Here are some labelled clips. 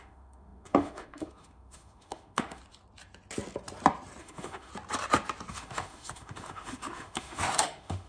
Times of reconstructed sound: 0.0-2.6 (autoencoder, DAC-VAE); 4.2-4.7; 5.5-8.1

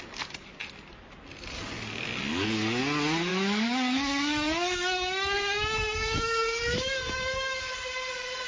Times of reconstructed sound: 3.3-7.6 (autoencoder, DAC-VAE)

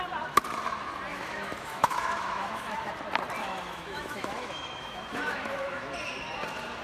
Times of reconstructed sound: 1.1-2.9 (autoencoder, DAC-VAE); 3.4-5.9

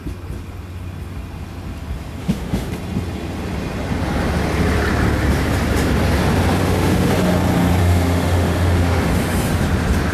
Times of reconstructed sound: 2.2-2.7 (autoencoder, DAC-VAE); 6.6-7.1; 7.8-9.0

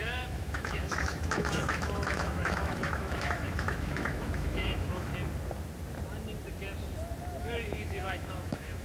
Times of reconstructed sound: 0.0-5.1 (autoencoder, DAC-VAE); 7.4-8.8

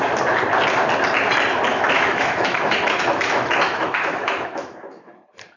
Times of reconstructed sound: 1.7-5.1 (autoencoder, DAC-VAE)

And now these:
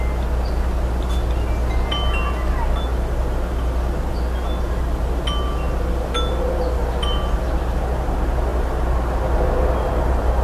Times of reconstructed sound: none

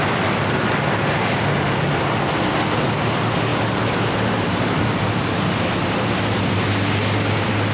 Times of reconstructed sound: none